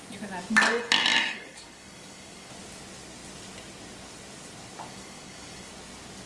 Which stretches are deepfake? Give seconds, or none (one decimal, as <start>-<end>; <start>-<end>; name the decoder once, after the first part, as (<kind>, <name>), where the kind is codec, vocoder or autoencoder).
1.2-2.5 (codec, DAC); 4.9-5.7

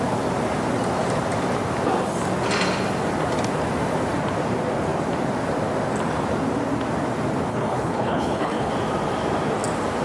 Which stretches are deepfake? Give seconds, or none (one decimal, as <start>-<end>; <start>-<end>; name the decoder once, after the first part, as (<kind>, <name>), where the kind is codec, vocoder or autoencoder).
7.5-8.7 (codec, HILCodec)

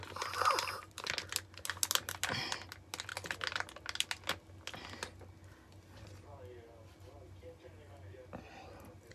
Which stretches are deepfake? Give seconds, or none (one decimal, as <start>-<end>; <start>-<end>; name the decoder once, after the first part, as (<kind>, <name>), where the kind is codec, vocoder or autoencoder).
none

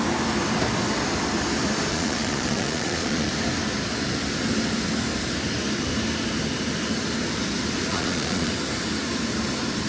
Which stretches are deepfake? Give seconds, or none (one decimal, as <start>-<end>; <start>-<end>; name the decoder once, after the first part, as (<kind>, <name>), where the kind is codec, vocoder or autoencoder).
1.9-3.3 (vocoder, Vocos); 7.9-8.5

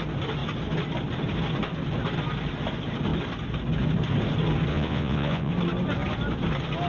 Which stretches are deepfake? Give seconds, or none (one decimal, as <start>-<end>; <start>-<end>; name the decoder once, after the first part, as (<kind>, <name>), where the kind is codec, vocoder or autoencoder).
4.7-5.5 (vocoder, Vocos)

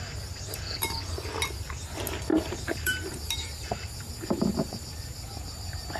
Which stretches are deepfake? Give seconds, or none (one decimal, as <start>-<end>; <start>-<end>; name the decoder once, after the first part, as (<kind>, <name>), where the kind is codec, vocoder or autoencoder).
2.3-6.0 (vocoder, BigVGAN v2)

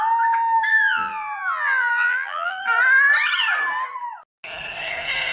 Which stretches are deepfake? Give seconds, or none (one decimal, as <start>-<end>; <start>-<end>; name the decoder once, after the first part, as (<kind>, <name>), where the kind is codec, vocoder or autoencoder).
0.7-2.6 (vocoder, BigVGAN v2)